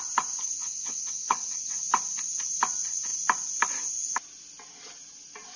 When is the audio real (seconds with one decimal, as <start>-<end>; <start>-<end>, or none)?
0.0-0.6; 1.8-5.6